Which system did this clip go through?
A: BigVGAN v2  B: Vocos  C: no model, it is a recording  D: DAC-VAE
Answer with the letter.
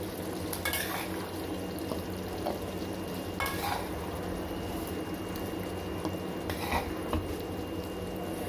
C